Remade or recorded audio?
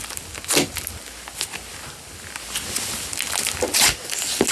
recorded